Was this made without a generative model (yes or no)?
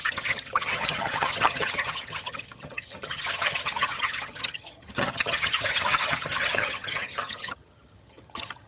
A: no